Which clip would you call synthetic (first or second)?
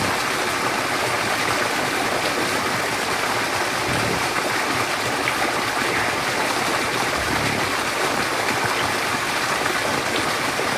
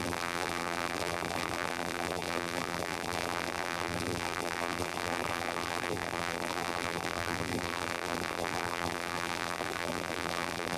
second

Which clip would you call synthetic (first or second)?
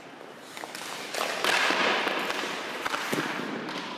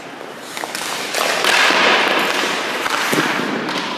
first